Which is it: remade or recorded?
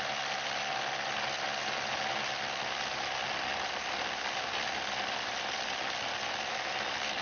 recorded